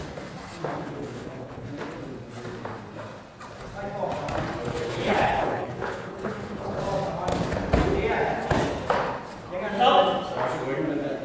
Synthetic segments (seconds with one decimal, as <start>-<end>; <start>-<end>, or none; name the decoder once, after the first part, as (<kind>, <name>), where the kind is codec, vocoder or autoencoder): 0.8-1.7 (codec, HILCodec); 4.7-6.8